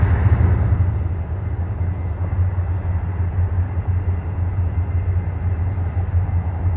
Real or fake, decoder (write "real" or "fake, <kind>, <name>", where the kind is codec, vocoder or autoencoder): real